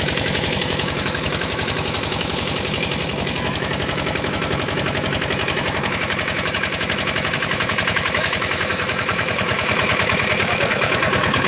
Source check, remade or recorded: remade